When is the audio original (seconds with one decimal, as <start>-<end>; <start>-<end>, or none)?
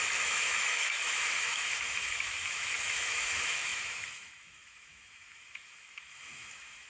none